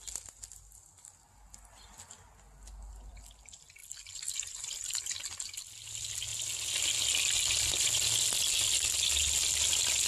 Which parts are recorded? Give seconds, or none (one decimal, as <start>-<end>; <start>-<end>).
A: 0.0-3.8; 5.2-10.1